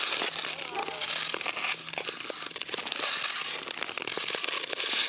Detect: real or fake real